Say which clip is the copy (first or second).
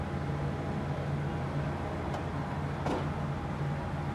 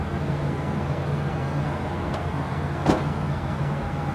second